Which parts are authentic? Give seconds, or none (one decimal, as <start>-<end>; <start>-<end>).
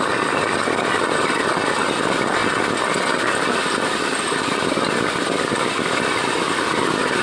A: 0.0-7.2